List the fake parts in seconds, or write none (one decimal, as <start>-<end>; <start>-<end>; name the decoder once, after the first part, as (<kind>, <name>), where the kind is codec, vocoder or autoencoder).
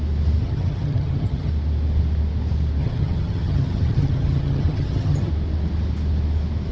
0.4-1.5 (vocoder, HiFi-GAN); 2.8-5.3